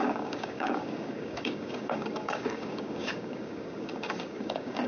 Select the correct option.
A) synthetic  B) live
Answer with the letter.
A